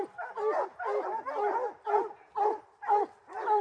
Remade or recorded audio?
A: recorded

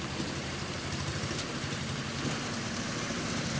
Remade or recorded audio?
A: remade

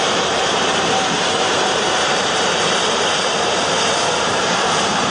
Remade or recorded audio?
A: remade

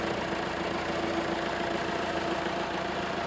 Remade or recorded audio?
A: recorded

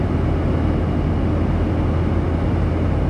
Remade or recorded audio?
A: recorded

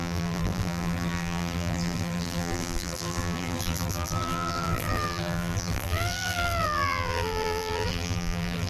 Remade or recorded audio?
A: remade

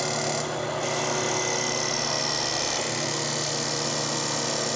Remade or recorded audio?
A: recorded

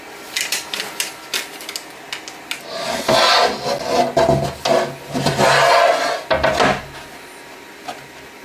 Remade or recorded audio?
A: recorded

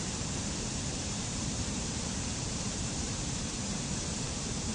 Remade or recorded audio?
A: remade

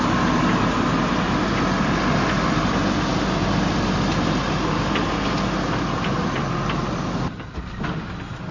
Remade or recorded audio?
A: recorded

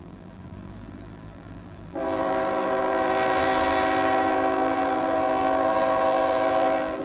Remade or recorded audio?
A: remade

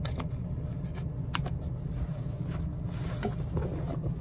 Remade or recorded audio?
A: recorded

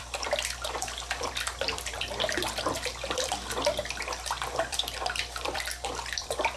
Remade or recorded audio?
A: remade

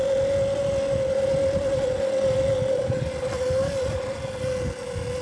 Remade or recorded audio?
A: recorded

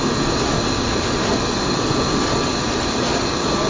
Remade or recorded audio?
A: recorded